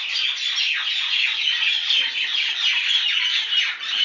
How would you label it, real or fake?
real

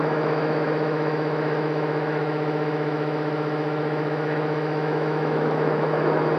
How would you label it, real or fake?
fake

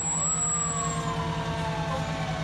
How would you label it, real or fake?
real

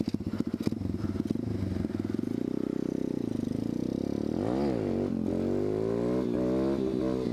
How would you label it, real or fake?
real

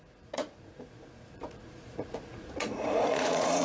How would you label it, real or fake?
fake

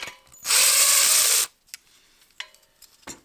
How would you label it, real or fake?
real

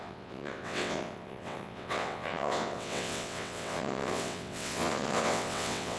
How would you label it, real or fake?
fake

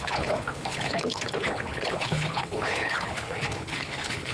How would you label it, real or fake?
fake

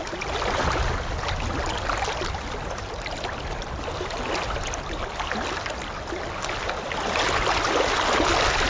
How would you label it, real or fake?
real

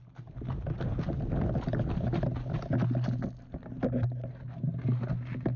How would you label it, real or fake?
real